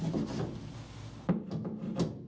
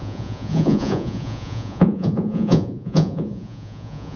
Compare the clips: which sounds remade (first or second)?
second